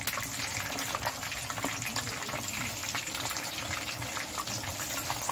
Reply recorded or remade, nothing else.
recorded